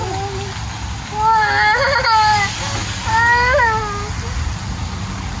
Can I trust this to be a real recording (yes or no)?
yes